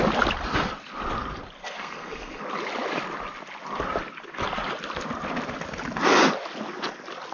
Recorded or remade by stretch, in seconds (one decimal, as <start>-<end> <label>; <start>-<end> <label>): 0.0-1.6 recorded; 1.6-2.4 remade; 2.4-7.3 recorded